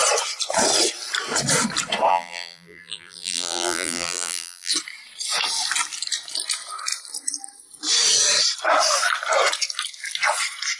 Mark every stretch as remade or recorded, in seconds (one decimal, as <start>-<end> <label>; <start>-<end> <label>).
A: 0.0-2.1 recorded; 2.1-4.7 remade; 4.7-10.8 recorded